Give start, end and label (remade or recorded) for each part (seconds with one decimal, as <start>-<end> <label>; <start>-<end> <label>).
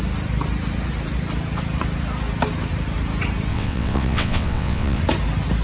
0.0-3.5 recorded; 3.5-5.0 remade; 5.0-5.6 recorded